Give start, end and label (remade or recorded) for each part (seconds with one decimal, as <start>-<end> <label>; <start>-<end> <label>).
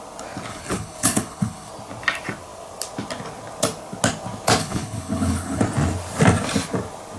0.0-0.5 recorded; 0.5-1.7 remade; 1.7-4.6 recorded; 4.6-5.6 remade; 5.6-7.2 recorded